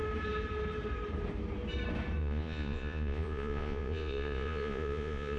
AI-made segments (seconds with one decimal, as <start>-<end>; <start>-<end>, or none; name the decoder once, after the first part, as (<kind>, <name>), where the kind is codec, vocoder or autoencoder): 2.2-5.4 (vocoder, Vocos)